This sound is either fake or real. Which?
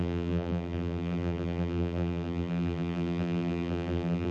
fake